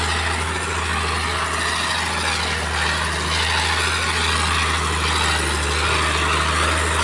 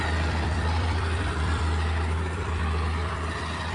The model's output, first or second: second